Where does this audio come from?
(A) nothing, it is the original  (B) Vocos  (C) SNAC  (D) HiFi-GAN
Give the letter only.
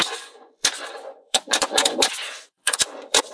B